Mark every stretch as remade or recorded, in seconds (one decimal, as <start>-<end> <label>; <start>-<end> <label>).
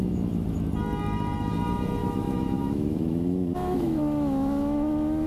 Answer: 0.0-0.6 remade; 0.6-2.0 recorded; 2.0-5.3 remade